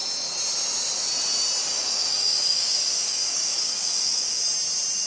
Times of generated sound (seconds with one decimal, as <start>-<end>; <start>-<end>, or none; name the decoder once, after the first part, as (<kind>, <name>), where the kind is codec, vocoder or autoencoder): 1.6-4.4 (codec, DAC)